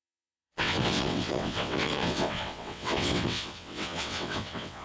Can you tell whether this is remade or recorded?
remade